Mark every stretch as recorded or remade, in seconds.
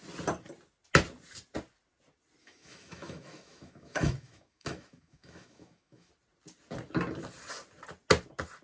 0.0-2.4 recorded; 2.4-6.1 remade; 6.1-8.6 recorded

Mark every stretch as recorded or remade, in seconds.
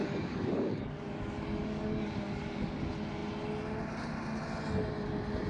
0.0-2.8 remade; 2.8-5.5 recorded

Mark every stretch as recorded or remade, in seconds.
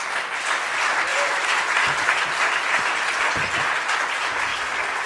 0.0-5.1 recorded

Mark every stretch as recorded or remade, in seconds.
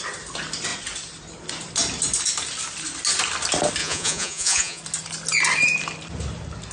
0.0-3.8 recorded; 3.8-4.8 remade; 4.8-6.7 recorded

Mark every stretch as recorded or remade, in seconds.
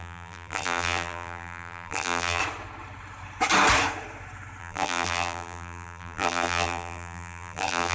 0.0-2.4 remade; 2.4-4.6 recorded; 4.6-7.9 remade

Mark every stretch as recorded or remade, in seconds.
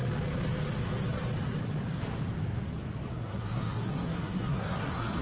0.0-3.1 recorded; 3.1-5.2 remade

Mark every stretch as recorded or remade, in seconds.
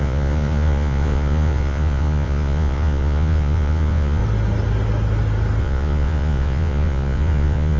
0.0-4.2 remade; 4.2-5.6 recorded; 5.6-7.8 remade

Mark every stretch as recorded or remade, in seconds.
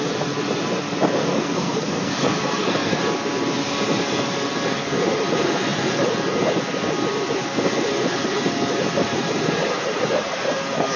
0.0-1.2 recorded; 1.2-3.0 remade; 3.0-11.0 recorded